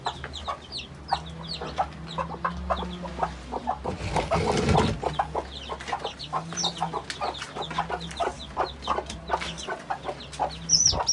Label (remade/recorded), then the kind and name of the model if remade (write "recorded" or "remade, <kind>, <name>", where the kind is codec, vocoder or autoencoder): recorded